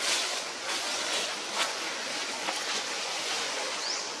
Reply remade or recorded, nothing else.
remade